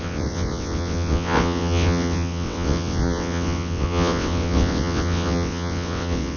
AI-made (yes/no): yes